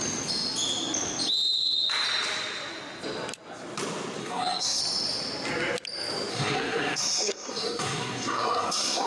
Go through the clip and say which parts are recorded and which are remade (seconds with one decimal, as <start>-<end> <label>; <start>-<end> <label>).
0.0-4.2 recorded; 4.2-4.8 remade; 4.8-6.3 recorded; 6.3-9.1 remade